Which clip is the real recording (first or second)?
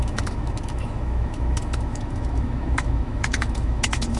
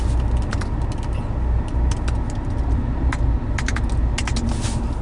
second